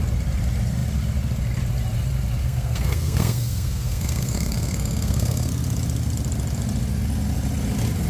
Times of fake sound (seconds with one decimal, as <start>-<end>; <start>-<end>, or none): 2.4-5.5